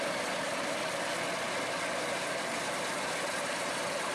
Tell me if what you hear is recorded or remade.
recorded